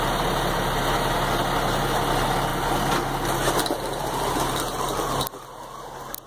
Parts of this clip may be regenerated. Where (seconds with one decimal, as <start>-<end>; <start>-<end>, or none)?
none